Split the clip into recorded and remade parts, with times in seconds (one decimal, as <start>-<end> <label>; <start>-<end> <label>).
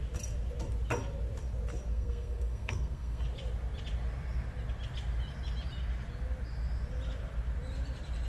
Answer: 0.0-1.9 recorded; 1.9-3.2 remade; 3.2-8.3 recorded